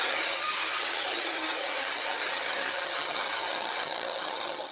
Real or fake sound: fake